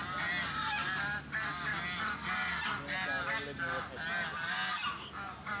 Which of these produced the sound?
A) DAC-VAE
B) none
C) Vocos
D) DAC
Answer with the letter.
B